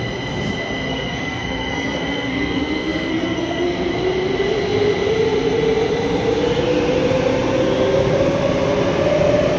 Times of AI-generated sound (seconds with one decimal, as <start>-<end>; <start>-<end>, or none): 0.9-3.9